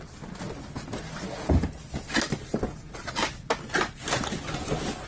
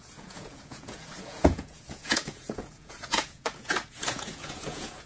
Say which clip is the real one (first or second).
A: first